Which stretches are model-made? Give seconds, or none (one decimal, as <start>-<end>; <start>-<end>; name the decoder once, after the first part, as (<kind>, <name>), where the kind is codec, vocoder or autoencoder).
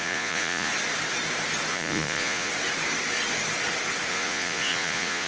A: 0.0-0.7 (vocoder, Vocos); 1.7-2.5; 4.1-5.3